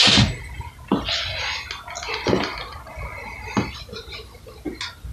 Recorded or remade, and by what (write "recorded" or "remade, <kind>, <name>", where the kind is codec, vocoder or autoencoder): recorded